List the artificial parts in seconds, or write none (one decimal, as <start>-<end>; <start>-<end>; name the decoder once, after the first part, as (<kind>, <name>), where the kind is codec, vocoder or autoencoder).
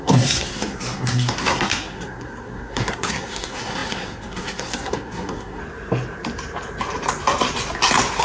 0.0-5.6 (codec, SNAC)